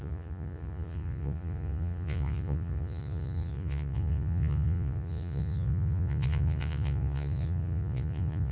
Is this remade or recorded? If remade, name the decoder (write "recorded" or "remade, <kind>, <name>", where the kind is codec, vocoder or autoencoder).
remade, vocoder, Vocos